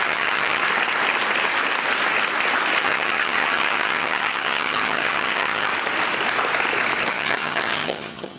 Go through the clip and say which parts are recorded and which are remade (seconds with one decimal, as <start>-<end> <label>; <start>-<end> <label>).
0.0-0.6 remade; 0.6-2.8 recorded; 2.8-5.7 remade; 5.7-7.1 recorded; 7.1-8.4 remade